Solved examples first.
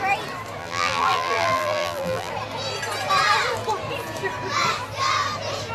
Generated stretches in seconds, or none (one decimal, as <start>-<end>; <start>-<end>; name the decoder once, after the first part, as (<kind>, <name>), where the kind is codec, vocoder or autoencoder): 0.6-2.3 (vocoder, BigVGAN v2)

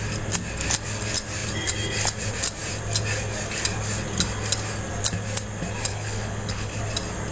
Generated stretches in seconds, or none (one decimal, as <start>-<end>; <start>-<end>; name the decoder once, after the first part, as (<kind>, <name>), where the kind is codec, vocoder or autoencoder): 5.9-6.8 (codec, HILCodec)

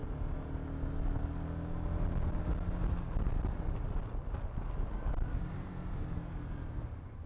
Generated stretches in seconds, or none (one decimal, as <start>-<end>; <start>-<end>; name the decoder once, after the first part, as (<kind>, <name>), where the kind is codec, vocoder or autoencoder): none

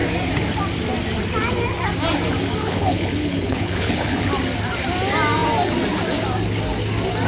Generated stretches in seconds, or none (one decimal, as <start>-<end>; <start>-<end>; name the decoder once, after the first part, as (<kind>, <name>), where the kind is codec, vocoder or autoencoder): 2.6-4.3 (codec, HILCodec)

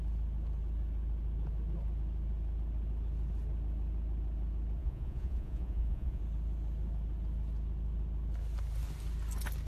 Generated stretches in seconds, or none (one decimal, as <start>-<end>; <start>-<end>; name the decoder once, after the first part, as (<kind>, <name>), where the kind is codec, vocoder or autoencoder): 4.8-6.2 (vocoder, Vocos)